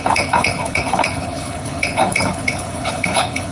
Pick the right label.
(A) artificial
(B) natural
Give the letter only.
A